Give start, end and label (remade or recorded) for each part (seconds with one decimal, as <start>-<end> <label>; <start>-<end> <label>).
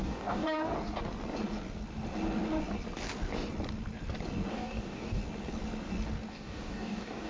0.0-0.7 remade; 0.7-4.5 recorded; 4.5-5.2 remade; 5.2-6.3 recorded; 6.3-7.3 remade